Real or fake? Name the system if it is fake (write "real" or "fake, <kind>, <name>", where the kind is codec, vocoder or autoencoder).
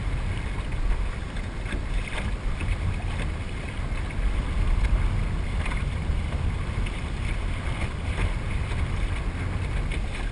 real